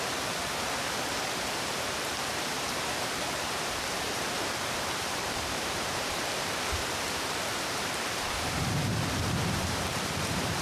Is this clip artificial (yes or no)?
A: yes